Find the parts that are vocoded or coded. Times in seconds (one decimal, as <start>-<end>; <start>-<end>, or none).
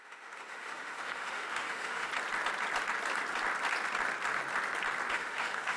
0.0-2.1; 5.1-5.8